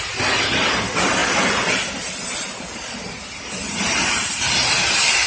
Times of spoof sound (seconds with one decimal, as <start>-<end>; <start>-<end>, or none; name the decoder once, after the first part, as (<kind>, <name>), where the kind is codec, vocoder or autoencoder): none